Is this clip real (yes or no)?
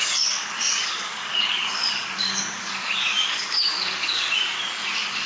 no